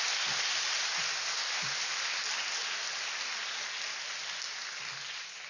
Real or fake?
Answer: real